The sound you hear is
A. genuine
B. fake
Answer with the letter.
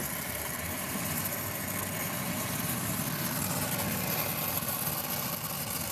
A